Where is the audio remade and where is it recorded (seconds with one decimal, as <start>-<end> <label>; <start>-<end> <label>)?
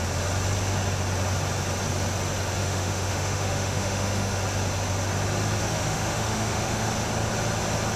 0.0-2.6 recorded; 2.6-4.4 remade; 4.4-5.6 recorded; 5.6-6.9 remade; 6.9-8.0 recorded